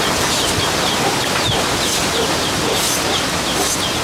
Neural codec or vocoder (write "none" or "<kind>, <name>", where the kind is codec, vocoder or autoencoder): none